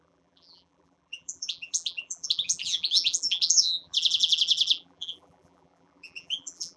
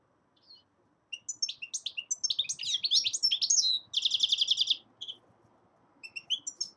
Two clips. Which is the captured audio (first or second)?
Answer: second